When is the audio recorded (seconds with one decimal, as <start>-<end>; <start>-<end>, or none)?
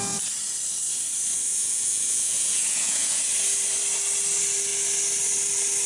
0.0-1.5; 3.2-5.9